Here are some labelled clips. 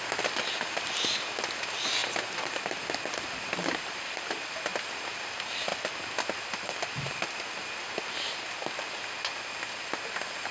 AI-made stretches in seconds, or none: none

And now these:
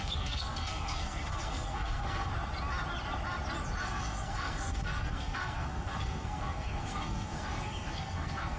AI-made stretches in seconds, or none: 0.0-2.3 (codec, SNAC); 3.8-8.6